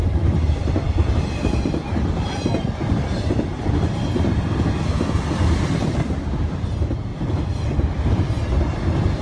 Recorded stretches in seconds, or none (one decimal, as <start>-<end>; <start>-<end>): 1.1-3.5; 5.1-7.1; 8.1-9.2